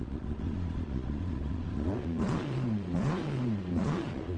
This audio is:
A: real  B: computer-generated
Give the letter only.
B